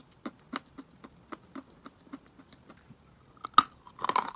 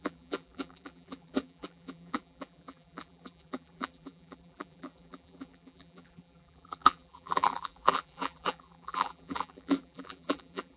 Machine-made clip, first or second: second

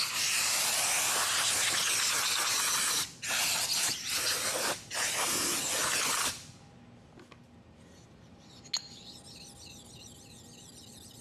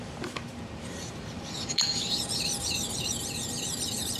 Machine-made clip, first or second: second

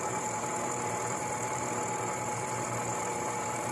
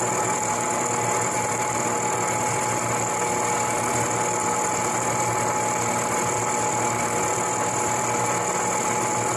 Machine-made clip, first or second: first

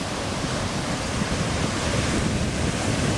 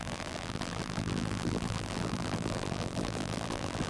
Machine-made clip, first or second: second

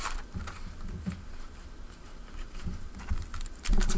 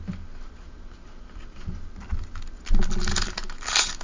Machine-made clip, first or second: first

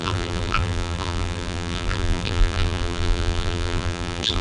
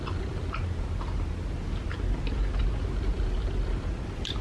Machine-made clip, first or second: first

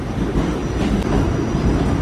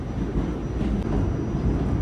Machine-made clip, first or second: first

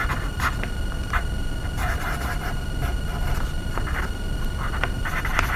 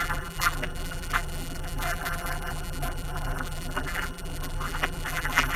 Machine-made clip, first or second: second